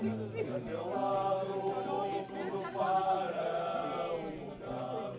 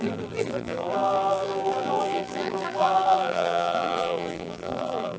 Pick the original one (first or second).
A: first